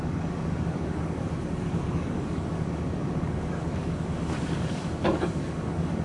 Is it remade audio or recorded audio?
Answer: remade